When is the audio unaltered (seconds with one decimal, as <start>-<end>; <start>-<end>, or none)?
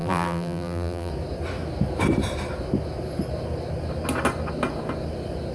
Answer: 1.1-5.5